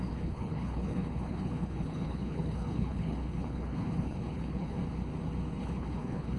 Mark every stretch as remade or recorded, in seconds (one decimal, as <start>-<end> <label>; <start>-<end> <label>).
0.0-4.8 remade; 4.8-5.6 recorded; 5.6-6.4 remade